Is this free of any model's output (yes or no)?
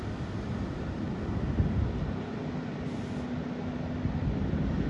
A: yes